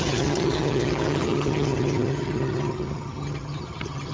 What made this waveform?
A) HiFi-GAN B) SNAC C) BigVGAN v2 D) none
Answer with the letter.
A